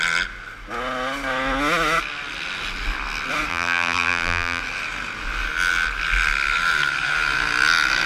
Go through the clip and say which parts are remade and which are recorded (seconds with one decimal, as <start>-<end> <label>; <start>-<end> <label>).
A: 0.0-3.5 recorded; 3.5-4.6 remade; 4.6-8.1 recorded